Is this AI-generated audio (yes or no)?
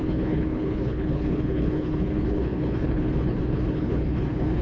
yes